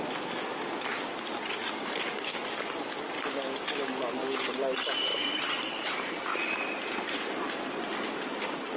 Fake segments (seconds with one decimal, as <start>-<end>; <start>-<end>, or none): 5.1-6.1